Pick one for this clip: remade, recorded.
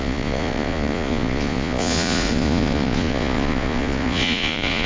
remade